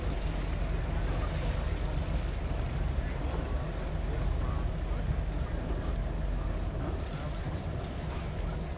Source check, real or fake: real